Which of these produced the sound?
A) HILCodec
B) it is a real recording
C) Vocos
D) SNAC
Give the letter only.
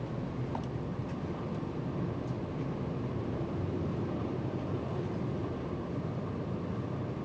B